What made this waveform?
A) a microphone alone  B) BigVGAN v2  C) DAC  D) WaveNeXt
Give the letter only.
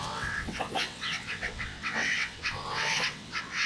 D